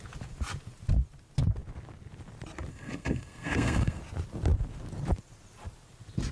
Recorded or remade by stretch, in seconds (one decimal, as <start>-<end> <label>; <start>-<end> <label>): 0.0-2.7 recorded; 2.7-4.0 remade; 4.0-6.3 recorded